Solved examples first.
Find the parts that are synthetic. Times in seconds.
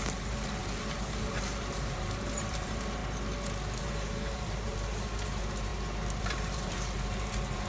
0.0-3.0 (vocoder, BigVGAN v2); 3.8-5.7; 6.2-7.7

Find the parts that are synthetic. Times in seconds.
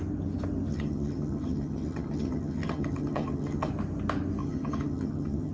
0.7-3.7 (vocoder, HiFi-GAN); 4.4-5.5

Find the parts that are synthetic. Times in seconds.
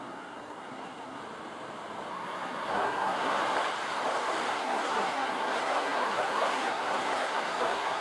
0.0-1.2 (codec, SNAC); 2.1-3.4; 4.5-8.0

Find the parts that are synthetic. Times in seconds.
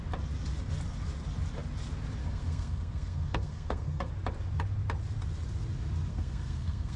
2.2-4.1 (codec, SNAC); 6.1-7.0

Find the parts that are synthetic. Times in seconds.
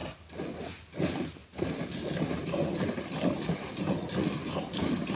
none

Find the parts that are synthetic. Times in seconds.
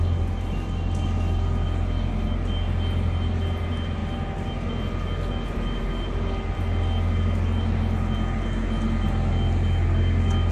none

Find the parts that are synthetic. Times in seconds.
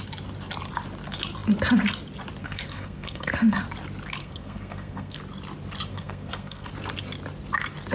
2.4-3.6 (codec, SNAC); 4.2-5.2; 5.9-6.7